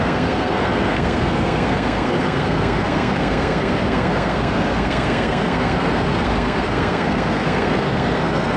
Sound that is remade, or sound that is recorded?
remade